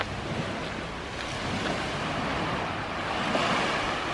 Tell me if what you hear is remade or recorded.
recorded